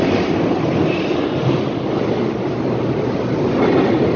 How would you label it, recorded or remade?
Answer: recorded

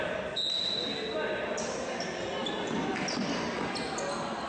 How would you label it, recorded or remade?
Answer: recorded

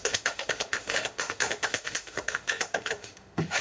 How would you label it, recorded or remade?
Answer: remade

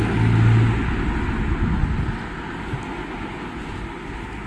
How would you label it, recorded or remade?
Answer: recorded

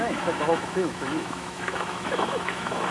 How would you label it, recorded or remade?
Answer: remade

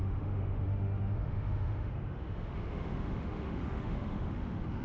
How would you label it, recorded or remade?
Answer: remade